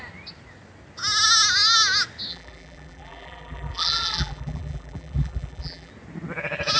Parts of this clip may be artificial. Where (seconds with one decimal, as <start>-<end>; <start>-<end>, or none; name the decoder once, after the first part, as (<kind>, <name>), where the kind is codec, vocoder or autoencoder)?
2.3-5.9 (vocoder, BigVGAN v2)